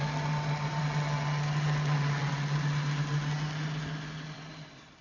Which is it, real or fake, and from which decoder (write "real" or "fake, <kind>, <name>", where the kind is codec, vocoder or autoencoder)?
real